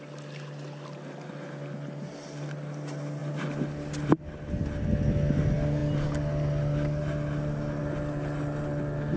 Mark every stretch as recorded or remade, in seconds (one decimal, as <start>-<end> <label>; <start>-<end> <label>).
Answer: 0.0-9.2 recorded